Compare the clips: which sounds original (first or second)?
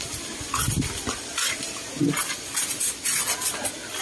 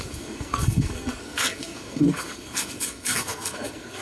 first